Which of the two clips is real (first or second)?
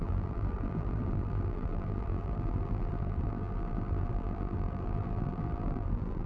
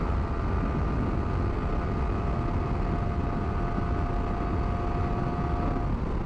second